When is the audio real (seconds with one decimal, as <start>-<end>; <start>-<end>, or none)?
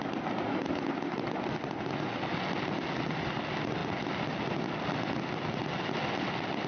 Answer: 0.0-6.7